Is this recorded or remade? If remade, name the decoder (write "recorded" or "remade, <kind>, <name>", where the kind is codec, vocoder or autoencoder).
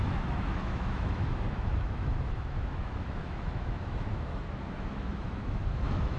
remade, autoencoder, DAC-VAE